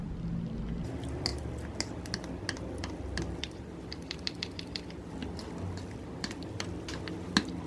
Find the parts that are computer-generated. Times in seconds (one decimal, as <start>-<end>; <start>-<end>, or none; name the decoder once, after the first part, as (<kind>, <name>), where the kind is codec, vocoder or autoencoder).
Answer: none